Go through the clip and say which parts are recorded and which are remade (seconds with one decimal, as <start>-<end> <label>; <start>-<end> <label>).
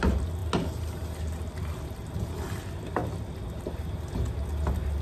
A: 0.0-5.0 recorded